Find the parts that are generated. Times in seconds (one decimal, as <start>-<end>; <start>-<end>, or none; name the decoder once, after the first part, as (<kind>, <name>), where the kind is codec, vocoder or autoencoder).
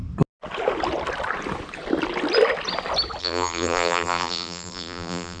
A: 3.2-5.4 (vocoder, BigVGAN v2)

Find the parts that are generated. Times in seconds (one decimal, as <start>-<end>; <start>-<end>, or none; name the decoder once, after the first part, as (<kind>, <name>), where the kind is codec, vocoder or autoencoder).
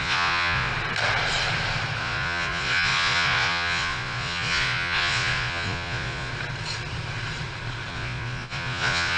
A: 0.0-0.7 (vocoder, Vocos); 2.0-6.3; 7.9-9.2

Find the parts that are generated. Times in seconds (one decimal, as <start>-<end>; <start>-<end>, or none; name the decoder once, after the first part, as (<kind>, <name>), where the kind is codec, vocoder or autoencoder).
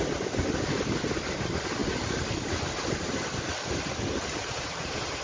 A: 4.4-5.2 (vocoder, Vocos)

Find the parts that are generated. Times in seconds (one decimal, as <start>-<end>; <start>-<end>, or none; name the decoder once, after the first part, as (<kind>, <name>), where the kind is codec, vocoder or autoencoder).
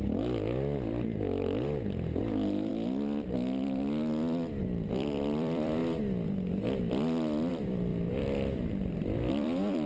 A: 0.0-1.1 (vocoder, BigVGAN v2); 2.2-2.7; 4.6-5.8; 7.5-9.9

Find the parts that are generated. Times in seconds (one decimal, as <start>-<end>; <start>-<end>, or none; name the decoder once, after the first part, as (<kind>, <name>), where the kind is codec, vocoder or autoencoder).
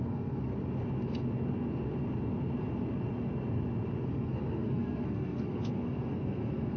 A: 0.0-0.5 (codec, SNAC); 4.0-6.8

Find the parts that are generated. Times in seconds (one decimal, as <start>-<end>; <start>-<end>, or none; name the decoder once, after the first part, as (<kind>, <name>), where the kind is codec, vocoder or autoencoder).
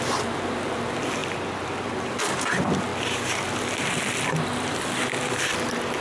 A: 0.0-2.9 (vocoder, BigVGAN v2)